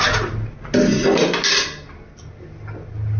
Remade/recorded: recorded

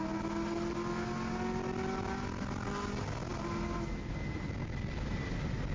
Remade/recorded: recorded